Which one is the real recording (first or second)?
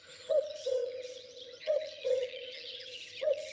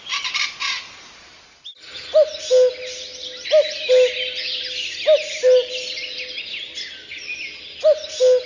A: second